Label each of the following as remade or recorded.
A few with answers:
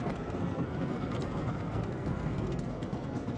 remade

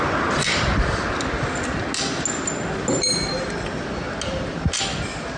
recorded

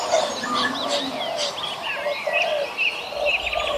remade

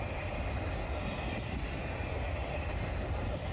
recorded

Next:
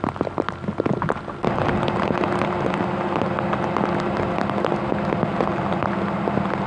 recorded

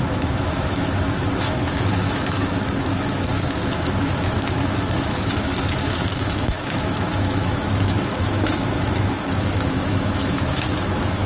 remade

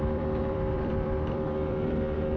remade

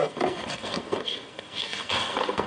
remade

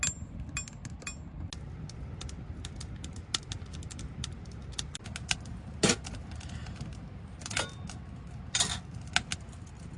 recorded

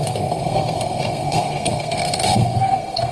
remade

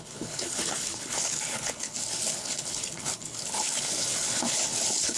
remade